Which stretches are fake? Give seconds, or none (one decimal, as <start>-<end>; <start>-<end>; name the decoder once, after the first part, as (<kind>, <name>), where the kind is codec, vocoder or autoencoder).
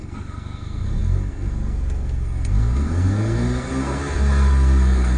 0.0-5.2 (codec, SNAC)